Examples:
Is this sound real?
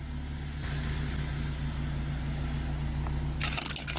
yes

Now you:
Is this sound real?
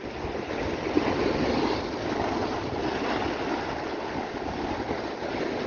yes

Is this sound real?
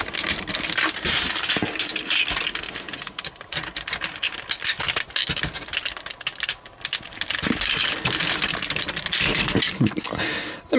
yes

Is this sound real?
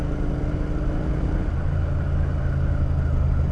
yes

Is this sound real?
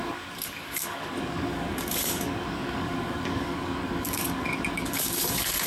no